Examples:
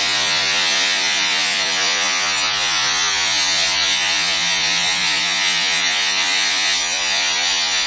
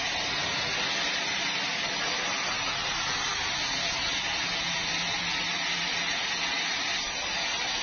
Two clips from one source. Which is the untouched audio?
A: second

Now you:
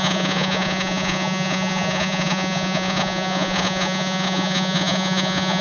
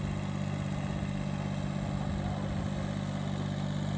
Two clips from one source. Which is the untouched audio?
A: second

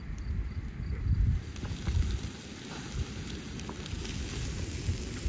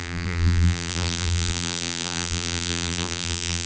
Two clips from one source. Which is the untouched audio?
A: first